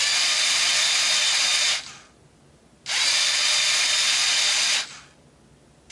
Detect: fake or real real